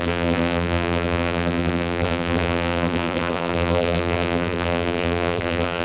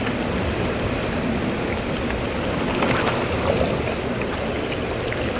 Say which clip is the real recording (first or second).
second